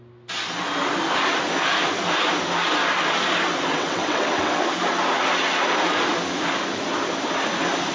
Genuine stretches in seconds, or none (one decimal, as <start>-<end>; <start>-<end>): 0.0-3.7; 4.6-7.9